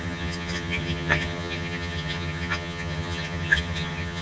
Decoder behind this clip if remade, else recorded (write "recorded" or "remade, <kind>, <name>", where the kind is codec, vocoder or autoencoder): remade, vocoder, HiFi-GAN